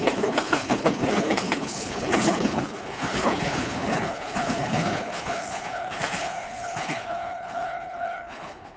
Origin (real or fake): fake